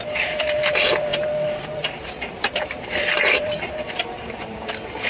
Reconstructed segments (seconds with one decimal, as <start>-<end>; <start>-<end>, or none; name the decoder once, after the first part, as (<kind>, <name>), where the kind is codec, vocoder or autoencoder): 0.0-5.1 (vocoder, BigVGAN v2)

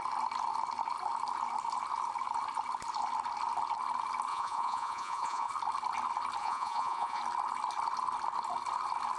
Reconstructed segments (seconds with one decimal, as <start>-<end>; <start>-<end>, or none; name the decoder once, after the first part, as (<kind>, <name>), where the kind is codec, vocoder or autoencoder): 4.3-5.5 (vocoder, Vocos); 6.4-7.2

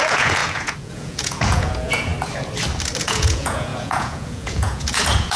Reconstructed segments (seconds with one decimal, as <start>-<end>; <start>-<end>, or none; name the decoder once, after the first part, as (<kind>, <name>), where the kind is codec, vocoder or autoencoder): 0.0-2.1 (vocoder, Vocos); 3.0-5.4

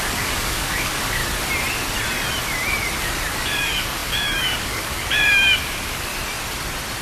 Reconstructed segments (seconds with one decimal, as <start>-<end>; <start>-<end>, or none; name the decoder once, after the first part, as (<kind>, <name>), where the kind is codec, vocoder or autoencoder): 0.0-1.2 (codec, DAC); 3.0-6.1

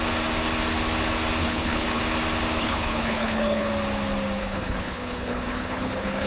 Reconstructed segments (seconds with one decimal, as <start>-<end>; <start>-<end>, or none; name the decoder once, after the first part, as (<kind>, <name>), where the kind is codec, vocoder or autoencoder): 1.4-2.0 (codec, HILCodec); 2.6-3.7; 4.4-6.3

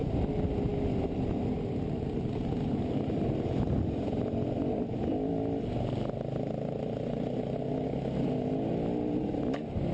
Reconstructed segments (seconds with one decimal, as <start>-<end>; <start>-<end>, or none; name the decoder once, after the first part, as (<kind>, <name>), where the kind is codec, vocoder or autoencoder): none